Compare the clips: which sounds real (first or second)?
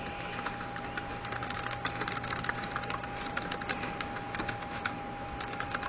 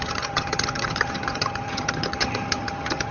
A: first